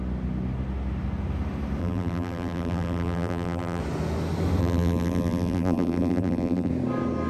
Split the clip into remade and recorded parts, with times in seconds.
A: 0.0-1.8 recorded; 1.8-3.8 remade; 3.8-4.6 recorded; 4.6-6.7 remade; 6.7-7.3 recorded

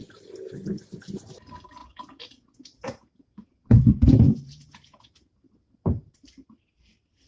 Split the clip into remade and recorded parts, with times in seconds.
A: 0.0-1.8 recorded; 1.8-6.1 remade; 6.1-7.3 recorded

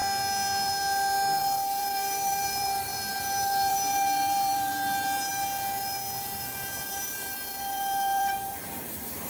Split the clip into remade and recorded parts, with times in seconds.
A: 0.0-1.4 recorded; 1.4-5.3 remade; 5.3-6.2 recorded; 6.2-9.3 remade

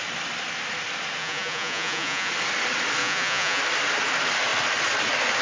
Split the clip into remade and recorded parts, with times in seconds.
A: 0.0-1.2 recorded; 1.2-2.3 remade; 2.3-3.0 recorded; 3.0-3.6 remade; 3.6-5.4 recorded